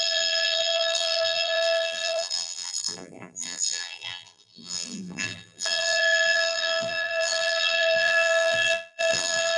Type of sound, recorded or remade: remade